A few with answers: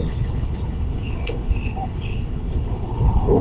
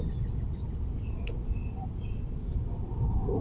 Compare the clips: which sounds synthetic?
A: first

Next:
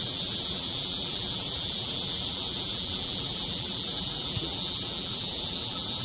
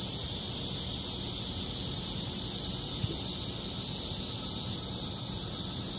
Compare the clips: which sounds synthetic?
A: first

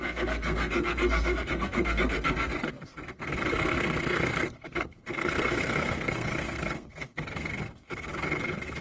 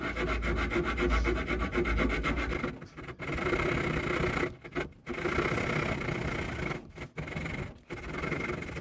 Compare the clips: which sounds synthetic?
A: first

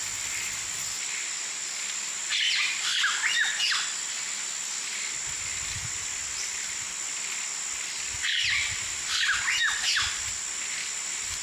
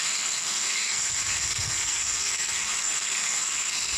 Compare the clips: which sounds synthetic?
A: second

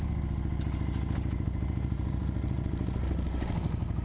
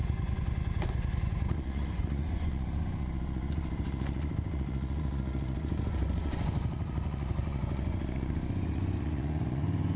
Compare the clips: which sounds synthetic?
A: second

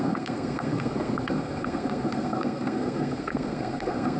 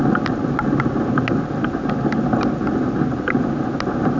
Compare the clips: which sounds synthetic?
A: first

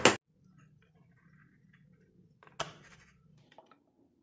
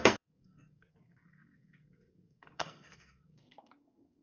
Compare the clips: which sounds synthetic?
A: second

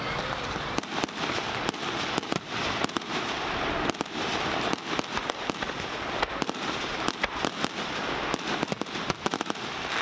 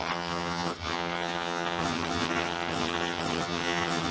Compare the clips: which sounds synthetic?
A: second